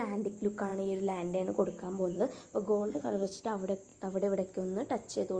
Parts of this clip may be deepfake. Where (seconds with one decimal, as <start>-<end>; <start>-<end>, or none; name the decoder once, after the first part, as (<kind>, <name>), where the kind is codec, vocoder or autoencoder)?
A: 2.8-3.4 (codec, SNAC)